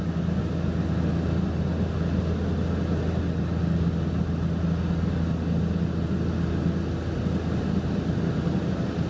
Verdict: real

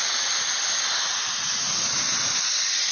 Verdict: real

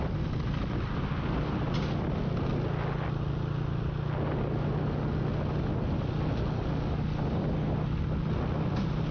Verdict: real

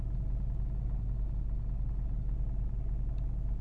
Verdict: real